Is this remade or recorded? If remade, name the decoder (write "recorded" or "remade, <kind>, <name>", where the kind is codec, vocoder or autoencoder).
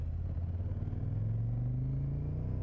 recorded